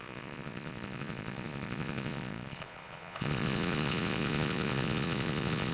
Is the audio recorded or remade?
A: remade